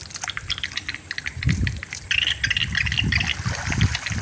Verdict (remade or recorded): recorded